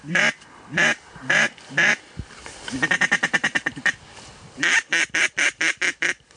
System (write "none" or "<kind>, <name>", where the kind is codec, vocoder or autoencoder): vocoder, BigVGAN v2